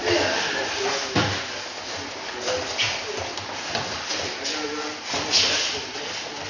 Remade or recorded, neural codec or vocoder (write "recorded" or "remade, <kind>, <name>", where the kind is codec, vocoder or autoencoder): recorded